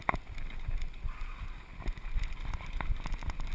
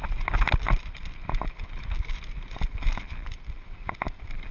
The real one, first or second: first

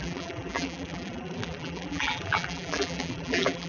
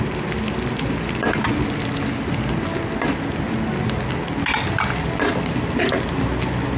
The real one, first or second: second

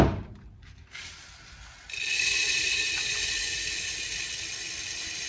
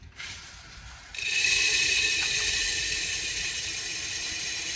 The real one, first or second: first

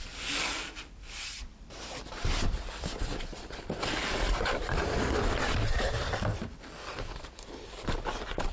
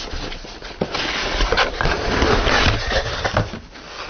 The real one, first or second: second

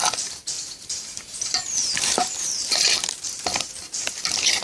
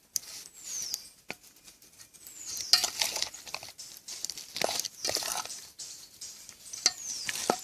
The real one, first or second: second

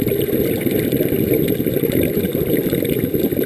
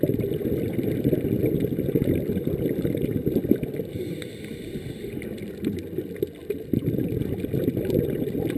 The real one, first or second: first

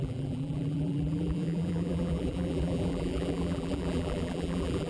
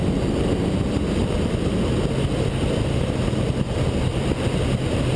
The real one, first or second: second